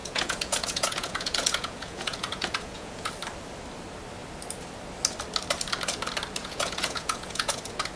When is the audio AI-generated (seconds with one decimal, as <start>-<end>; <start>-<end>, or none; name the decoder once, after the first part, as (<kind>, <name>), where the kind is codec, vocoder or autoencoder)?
0.0-3.1 (vocoder, Vocos); 6.4-7.6